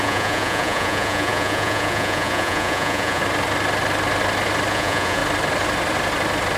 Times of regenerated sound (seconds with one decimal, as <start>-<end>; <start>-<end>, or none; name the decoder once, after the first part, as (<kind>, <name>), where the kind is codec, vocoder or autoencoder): 0.0-3.2 (vocoder, Vocos); 4.7-5.2